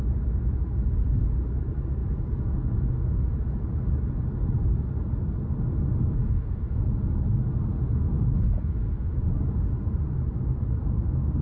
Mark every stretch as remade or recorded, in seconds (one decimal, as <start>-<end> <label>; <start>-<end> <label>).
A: 0.0-2.0 recorded; 2.0-3.6 remade; 3.6-5.9 recorded; 5.9-6.6 remade; 6.6-7.7 recorded; 7.7-9.4 remade; 9.4-11.4 recorded